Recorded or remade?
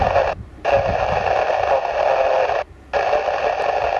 recorded